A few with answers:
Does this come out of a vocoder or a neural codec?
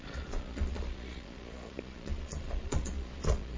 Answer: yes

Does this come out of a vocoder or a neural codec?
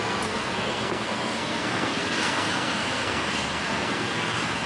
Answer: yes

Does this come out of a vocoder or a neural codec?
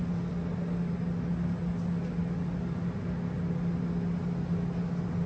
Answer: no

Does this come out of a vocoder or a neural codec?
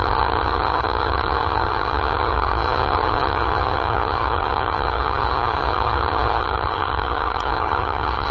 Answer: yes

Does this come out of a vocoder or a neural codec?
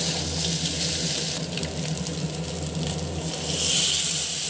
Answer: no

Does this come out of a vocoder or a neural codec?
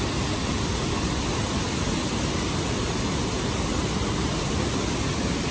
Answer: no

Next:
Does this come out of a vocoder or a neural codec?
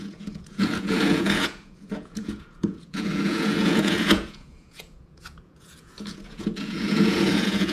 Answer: yes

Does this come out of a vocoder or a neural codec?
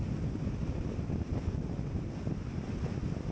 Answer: no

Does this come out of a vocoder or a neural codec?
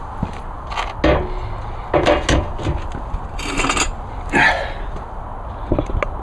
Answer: no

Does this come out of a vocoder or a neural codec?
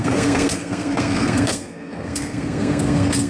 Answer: yes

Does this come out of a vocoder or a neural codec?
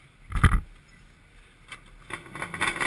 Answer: no